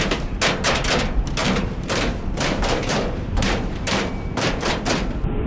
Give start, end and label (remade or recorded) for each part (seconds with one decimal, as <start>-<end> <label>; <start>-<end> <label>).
0.0-1.4 recorded; 1.4-4.7 remade; 4.7-5.5 recorded